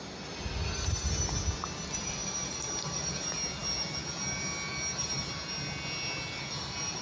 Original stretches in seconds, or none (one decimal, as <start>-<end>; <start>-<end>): 0.0-2.2; 3.1-7.0